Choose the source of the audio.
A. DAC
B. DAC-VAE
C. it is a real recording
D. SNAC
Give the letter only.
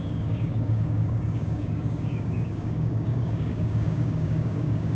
A